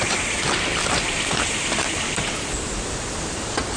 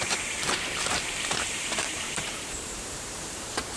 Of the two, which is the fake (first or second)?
second